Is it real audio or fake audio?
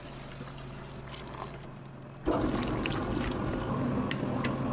real